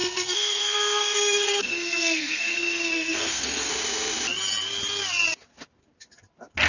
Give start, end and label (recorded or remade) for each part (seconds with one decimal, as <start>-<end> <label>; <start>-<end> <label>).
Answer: 0.0-3.7 remade; 3.7-6.7 recorded